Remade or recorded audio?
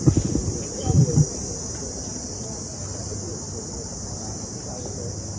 recorded